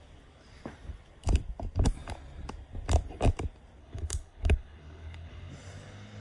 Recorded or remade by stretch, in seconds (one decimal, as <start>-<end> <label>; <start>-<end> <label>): 0.0-3.8 recorded; 3.8-5.5 remade; 5.5-6.2 recorded